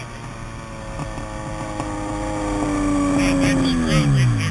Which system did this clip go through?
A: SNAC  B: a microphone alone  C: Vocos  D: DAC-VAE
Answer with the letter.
B